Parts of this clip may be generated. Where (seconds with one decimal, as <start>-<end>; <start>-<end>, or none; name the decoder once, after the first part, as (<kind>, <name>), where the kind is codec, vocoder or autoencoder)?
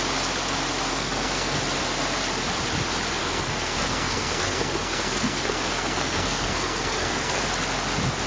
0.9-1.6 (codec, SNAC); 3.2-7.4